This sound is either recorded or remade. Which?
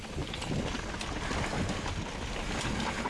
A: recorded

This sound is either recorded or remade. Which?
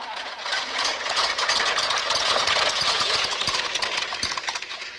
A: remade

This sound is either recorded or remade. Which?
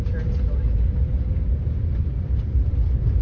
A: recorded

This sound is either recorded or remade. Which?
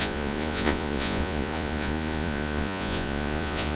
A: remade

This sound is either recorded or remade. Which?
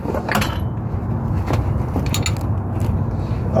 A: recorded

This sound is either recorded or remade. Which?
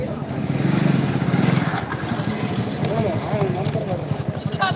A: recorded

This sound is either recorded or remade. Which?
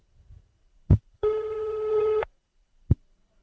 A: remade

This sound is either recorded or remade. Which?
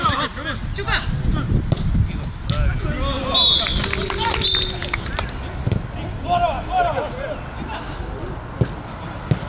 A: recorded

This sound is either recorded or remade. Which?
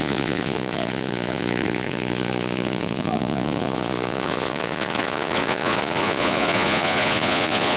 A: remade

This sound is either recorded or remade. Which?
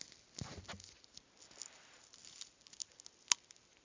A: recorded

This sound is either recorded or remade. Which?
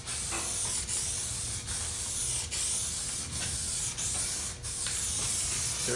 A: recorded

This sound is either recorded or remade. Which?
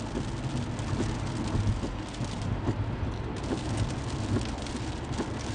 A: recorded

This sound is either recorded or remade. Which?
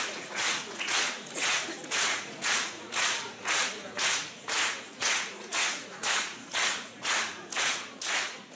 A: remade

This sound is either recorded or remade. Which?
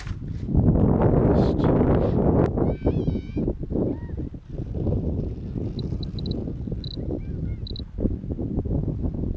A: recorded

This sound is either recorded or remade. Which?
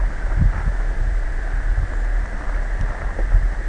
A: recorded